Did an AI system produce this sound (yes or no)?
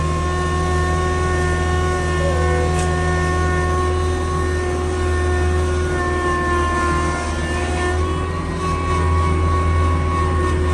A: no